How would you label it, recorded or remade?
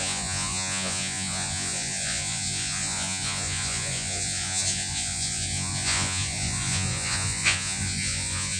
remade